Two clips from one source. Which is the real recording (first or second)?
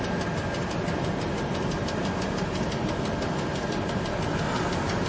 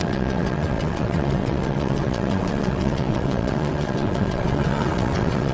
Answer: first